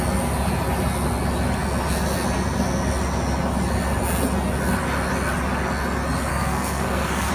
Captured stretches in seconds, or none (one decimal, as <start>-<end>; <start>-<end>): 0.0-6.3